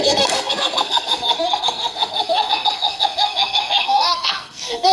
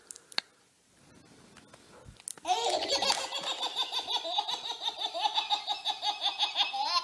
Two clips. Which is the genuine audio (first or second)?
second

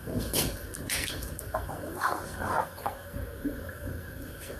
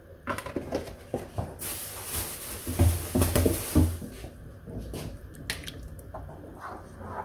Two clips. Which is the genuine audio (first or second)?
second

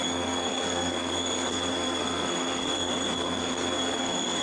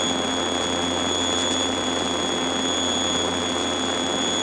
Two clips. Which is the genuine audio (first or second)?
second